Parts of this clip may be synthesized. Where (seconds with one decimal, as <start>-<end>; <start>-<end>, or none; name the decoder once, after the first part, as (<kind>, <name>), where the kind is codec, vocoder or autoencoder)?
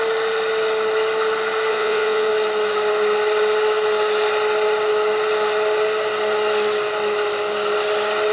1.7-2.3 (vocoder, WaveNeXt)